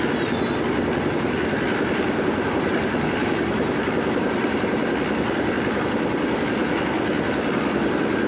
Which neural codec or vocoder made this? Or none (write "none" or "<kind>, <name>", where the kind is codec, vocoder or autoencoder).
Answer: none